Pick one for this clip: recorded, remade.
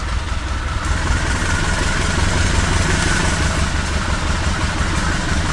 recorded